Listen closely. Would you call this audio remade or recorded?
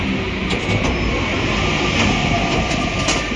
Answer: recorded